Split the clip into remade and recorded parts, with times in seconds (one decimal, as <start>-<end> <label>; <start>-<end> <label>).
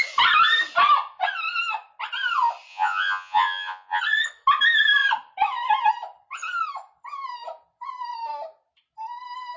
0.0-2.7 recorded; 2.7-4.0 remade; 4.0-9.6 recorded